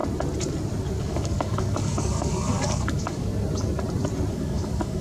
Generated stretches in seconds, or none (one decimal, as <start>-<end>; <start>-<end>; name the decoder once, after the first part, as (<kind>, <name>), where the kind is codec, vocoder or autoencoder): 1.0-3.3 (codec, DAC); 4.3-5.0